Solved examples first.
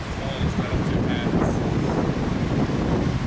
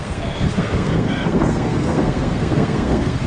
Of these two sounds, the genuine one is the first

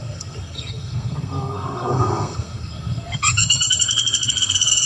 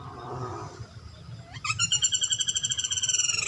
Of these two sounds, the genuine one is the second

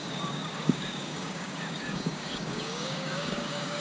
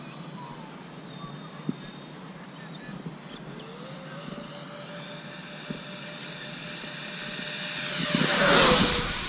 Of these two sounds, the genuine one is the second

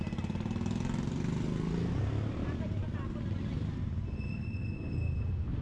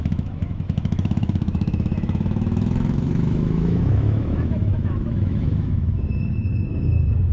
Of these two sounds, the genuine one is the first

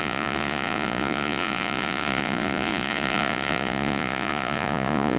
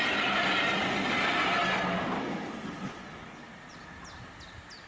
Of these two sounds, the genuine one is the second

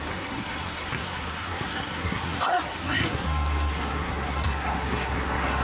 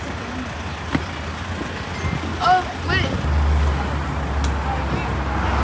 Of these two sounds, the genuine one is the second